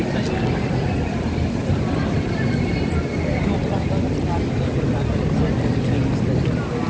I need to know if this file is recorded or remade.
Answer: recorded